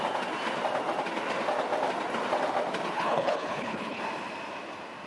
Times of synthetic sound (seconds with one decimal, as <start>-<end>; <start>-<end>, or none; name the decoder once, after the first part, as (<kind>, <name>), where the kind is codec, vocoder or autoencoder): 2.9-4.0 (codec, HILCodec)